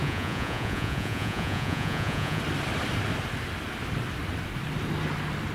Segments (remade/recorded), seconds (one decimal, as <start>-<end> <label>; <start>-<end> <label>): 0.0-2.4 remade; 2.4-5.5 recorded